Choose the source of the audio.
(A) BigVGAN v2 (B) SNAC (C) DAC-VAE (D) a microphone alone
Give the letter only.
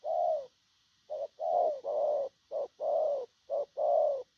D